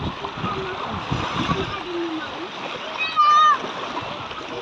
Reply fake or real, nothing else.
real